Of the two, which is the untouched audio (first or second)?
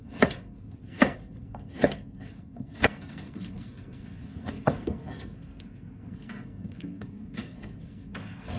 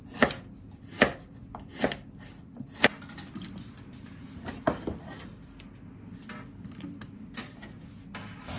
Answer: second